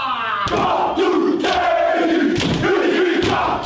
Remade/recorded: recorded